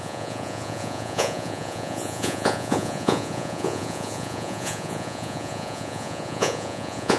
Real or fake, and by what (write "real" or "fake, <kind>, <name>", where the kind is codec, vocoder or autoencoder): fake, vocoder, Vocos